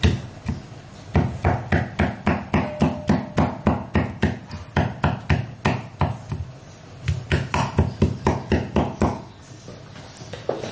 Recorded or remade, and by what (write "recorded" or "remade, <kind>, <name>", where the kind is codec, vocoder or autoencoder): recorded